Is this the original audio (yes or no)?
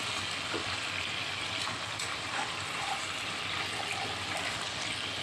yes